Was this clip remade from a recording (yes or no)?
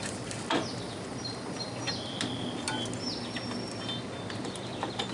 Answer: no